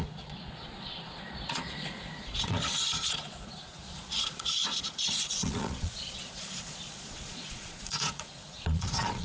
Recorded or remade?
remade